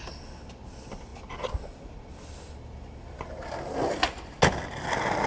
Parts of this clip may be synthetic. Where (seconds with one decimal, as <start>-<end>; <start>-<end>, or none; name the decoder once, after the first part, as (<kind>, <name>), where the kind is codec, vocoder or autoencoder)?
none